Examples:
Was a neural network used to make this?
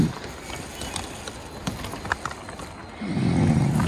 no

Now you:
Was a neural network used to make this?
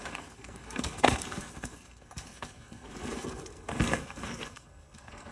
yes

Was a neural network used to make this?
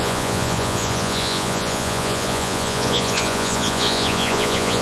yes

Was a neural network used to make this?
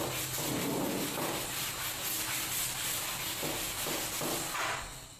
no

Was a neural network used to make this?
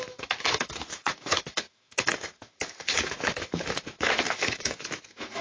yes